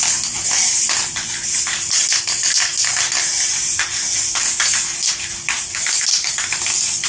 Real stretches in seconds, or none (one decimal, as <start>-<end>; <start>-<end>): 0.0-7.1